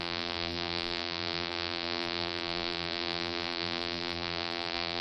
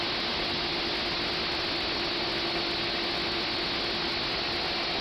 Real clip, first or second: second